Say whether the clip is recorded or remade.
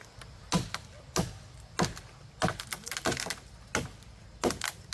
recorded